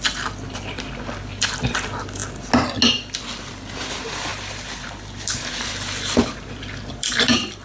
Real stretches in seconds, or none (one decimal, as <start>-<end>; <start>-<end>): 2.2-3.9

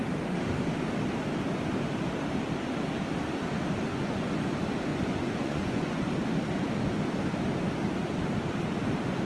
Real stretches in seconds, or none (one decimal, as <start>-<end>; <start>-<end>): 0.0-3.9; 4.5-4.9; 6.1-9.3

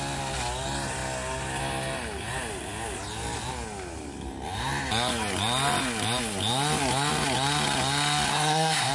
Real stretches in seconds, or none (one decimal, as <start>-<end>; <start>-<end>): 0.0-8.3

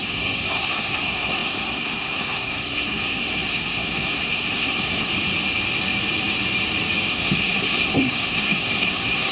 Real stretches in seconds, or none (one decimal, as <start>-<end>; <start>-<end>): 5.1-7.1

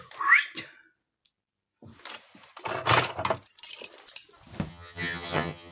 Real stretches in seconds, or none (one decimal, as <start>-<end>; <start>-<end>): 0.0-4.7